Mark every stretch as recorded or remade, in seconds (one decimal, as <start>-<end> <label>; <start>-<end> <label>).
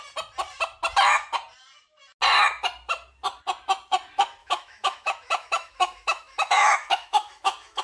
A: 0.0-4.4 recorded; 4.4-7.8 remade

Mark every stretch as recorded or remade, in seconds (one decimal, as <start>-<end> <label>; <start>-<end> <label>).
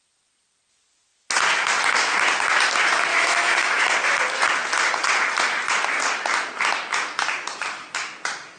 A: 0.0-3.1 recorded; 3.1-3.8 remade; 3.8-8.6 recorded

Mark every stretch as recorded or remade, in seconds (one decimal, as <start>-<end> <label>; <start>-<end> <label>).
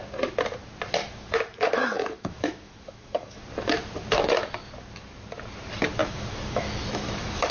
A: 0.0-1.0 recorded; 1.0-3.4 remade; 3.4-6.0 recorded; 6.0-7.5 remade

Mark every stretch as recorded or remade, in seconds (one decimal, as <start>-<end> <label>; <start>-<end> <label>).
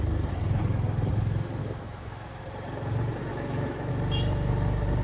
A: 0.0-1.6 recorded; 1.6-2.4 remade; 2.4-3.3 recorded; 3.3-3.9 remade; 3.9-5.0 recorded